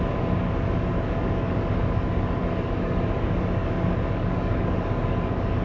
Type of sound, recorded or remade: remade